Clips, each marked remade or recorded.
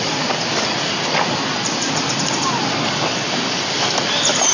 recorded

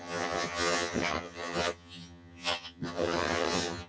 remade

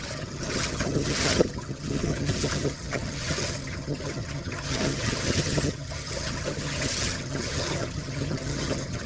remade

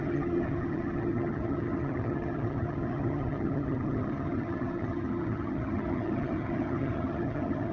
remade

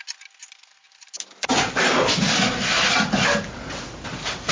recorded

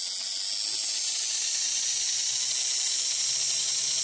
recorded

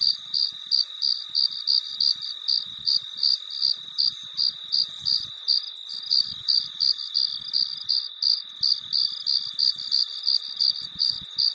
recorded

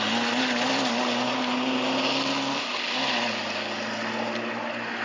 recorded